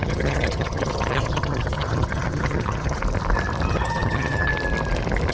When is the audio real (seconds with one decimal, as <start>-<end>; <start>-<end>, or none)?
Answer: 3.0-3.7; 4.5-5.3